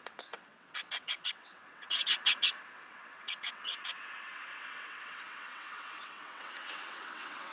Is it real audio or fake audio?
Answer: fake